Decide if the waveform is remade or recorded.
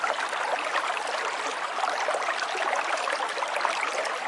recorded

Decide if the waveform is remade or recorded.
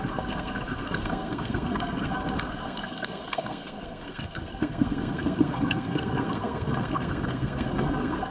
remade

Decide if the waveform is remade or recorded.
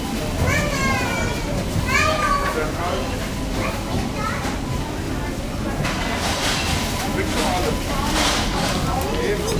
recorded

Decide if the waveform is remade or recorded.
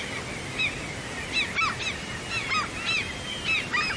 recorded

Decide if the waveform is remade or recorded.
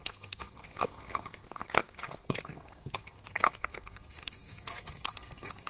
remade